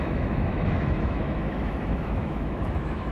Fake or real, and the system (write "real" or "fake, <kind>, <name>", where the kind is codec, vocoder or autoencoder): fake, autoencoder, DAC-VAE